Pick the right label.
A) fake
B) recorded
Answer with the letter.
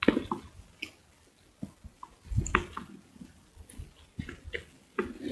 B